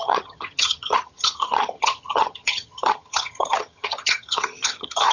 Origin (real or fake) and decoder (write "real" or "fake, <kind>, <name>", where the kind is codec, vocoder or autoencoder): fake, vocoder, HiFi-GAN